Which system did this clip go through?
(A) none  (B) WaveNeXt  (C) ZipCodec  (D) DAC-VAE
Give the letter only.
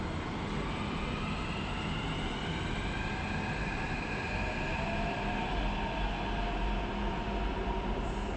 A